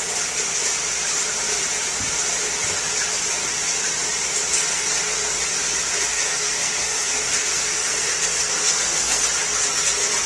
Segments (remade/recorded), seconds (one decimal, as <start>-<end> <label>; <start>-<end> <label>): 0.0-4.7 recorded; 4.7-5.3 remade; 5.3-6.1 recorded; 6.1-9.2 remade; 9.2-10.3 recorded